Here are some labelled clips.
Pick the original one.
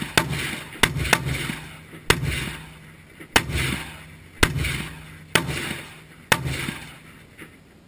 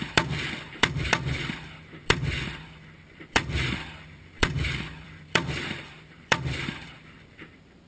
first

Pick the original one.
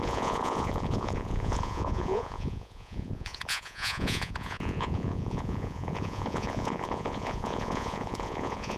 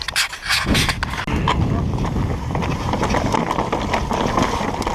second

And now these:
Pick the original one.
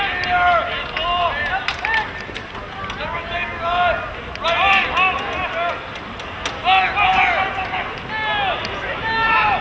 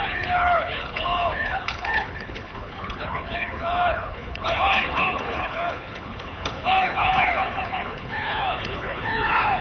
first